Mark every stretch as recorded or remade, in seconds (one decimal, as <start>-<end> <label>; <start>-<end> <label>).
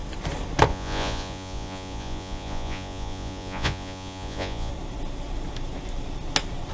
0.0-0.7 recorded; 0.7-4.7 remade; 4.7-6.7 recorded